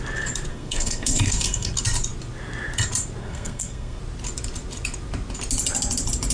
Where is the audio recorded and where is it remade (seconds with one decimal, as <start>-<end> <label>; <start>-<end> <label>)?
0.0-0.5 recorded; 0.5-1.7 remade; 1.7-3.2 recorded; 3.2-4.0 remade; 4.0-6.3 recorded